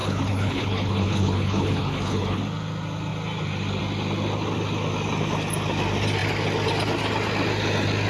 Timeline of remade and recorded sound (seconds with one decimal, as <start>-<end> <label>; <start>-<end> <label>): 0.0-2.4 remade; 2.4-8.1 recorded